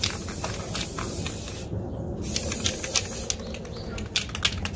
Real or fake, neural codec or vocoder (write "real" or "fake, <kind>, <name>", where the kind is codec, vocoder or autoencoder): real